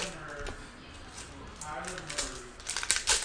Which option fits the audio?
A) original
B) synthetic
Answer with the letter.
A